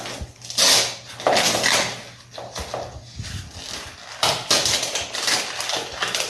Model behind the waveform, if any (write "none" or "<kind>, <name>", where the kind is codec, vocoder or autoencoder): none